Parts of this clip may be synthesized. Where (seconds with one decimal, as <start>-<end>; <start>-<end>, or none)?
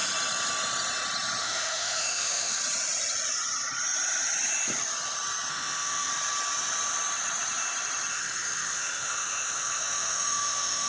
1.4-2.6; 5.5-6.1; 8.1-10.9